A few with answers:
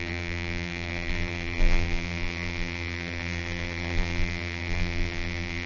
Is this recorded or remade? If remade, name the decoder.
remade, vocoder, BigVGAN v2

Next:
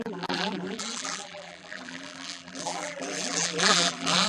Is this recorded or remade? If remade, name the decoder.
remade, vocoder, BigVGAN v2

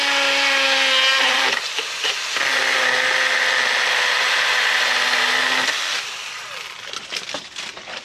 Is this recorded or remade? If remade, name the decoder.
recorded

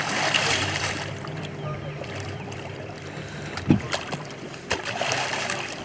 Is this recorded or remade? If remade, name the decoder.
remade, vocoder, BigVGAN v2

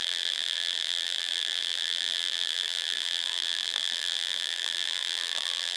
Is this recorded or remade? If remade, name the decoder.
remade, vocoder, BigVGAN v2